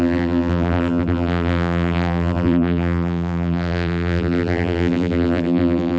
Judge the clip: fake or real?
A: fake